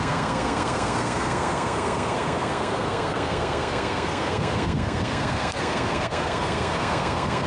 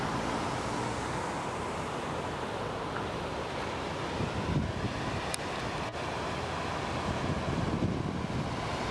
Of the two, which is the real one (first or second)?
second